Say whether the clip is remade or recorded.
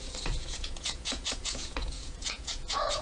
remade